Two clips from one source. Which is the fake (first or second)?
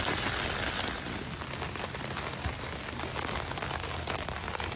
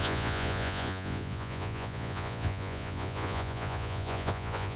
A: second